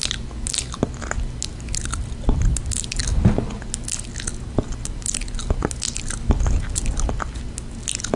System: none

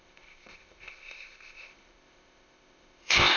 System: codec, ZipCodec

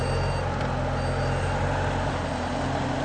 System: none